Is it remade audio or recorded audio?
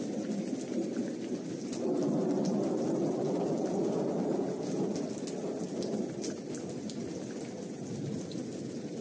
recorded